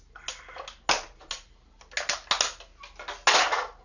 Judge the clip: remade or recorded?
recorded